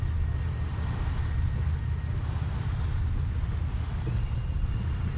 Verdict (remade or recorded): recorded